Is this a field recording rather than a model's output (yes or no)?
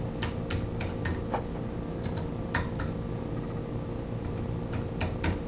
yes